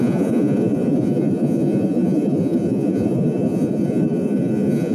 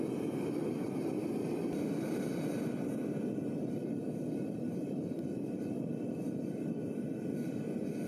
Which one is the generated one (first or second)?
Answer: first